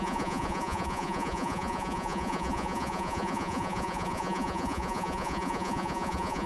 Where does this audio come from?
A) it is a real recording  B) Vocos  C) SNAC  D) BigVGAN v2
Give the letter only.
B